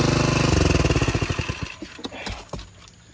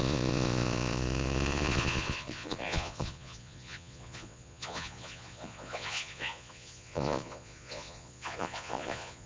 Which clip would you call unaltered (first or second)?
first